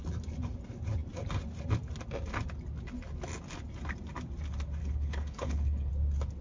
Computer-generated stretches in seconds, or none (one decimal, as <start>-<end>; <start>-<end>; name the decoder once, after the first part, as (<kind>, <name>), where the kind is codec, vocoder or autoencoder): 4.8-5.9 (codec, HILCodec)